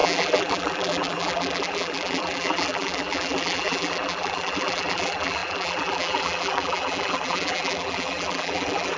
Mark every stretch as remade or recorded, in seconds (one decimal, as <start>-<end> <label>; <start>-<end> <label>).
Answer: 0.0-9.0 remade